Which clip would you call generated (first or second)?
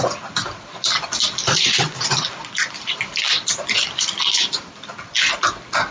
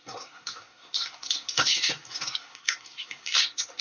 second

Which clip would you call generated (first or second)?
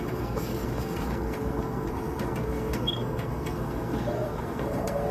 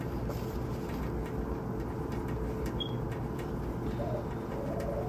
first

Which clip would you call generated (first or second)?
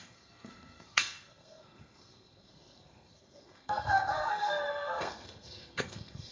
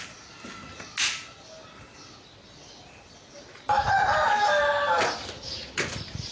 first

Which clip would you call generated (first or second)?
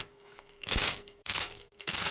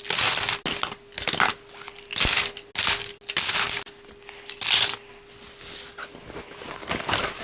first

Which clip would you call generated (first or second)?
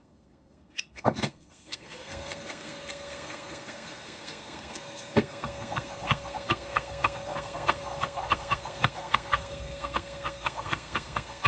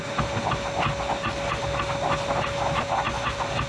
first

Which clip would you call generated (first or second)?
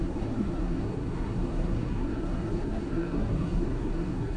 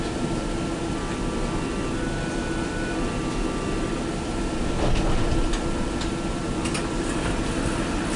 first